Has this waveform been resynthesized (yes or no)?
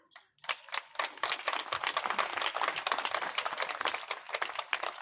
no